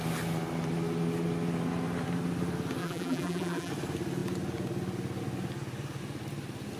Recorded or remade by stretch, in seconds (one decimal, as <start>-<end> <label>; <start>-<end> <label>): 0.0-2.8 recorded; 2.8-3.7 remade; 3.7-6.8 recorded